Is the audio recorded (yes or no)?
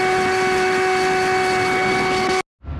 yes